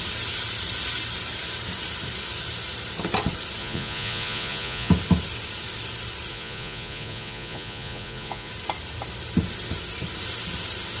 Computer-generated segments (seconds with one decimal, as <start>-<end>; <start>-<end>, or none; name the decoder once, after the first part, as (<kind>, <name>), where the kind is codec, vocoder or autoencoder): 3.6-4.9 (vocoder, Vocos); 6.3-8.5